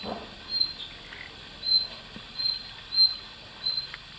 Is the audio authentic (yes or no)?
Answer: yes